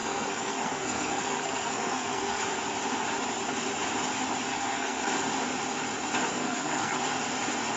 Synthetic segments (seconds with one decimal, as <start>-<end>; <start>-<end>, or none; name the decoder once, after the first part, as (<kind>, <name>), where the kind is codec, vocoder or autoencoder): 0.0-2.4 (codec, SNAC); 4.5-5.1; 6.3-7.0